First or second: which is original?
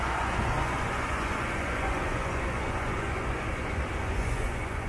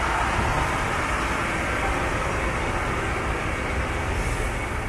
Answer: second